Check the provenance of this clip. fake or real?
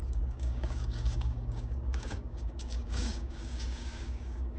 fake